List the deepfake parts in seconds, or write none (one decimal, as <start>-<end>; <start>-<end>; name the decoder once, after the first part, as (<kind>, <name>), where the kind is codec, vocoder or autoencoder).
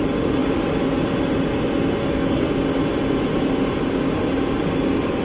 2.0-2.5 (codec, SNAC)